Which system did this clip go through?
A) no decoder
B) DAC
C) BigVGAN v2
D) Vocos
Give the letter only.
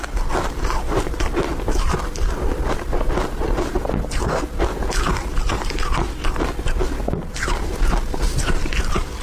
A